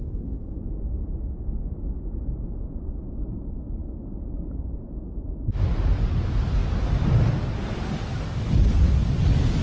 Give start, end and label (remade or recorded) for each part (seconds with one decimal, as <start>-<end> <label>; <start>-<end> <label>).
0.0-9.6 recorded